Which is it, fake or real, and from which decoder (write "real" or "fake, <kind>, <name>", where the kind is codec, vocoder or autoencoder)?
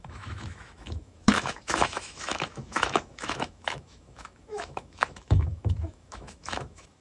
fake, autoencoder, DAC-VAE